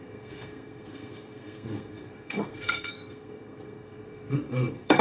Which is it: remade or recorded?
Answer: remade